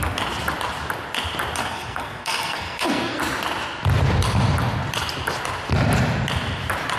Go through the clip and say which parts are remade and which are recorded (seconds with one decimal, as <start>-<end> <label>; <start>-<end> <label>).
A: 0.0-1.6 recorded; 1.6-3.2 remade; 3.2-7.0 recorded